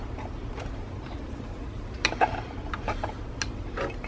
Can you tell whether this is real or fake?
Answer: real